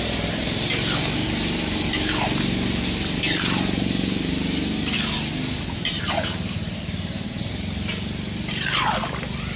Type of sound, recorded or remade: recorded